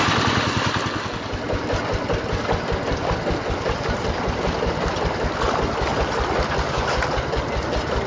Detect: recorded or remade recorded